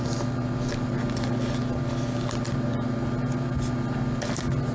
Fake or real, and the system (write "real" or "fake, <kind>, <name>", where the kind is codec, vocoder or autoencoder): real